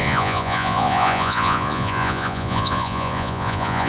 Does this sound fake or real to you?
fake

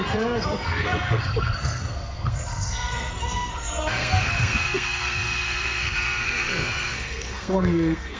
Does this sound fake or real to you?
fake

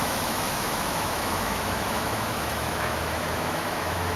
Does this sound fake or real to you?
fake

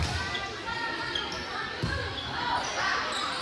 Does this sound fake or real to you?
real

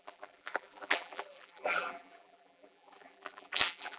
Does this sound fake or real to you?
fake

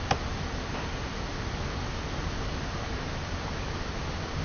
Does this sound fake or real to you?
real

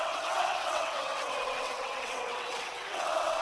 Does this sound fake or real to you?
fake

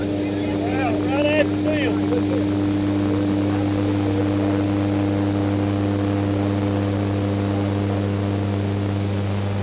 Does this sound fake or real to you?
real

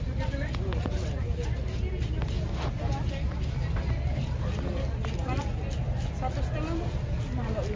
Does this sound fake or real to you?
real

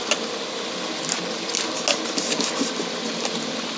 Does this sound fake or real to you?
real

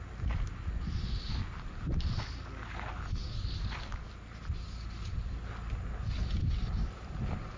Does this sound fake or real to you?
real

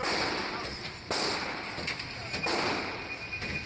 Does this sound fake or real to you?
real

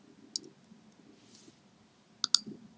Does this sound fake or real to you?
real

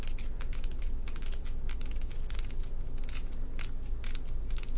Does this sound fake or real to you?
real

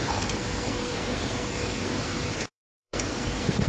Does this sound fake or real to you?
fake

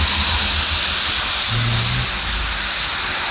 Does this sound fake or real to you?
real